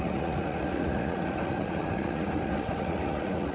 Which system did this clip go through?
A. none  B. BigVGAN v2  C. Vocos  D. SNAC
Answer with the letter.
C